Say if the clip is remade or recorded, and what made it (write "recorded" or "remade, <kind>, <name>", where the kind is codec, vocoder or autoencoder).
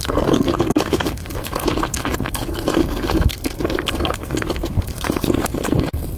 remade, codec, SNAC